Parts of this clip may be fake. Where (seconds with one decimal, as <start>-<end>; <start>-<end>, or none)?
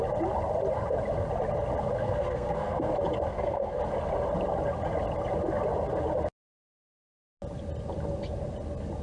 2.0-2.9; 3.3-3.8